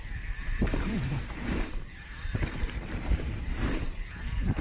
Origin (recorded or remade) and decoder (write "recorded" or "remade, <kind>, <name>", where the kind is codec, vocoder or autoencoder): remade, vocoder, BigVGAN v2